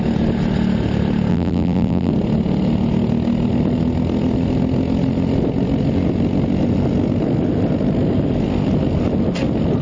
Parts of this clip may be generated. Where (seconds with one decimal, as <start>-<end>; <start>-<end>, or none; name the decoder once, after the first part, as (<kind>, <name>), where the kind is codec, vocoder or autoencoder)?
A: 1.3-2.1 (vocoder, BigVGAN v2)